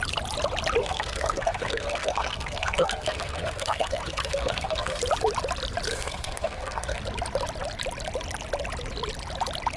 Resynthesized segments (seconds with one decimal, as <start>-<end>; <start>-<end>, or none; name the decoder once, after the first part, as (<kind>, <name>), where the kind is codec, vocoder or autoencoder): 0.8-5.0 (codec, SNAC); 5.9-7.0